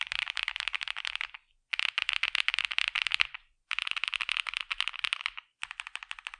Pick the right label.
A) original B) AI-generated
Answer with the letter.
A